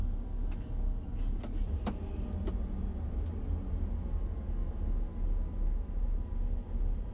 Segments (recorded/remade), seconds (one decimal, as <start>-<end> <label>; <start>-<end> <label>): 0.0-7.1 recorded